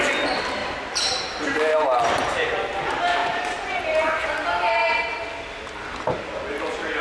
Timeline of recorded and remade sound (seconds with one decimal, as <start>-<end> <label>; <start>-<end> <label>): 0.0-3.2 recorded; 3.2-3.8 remade; 3.8-7.0 recorded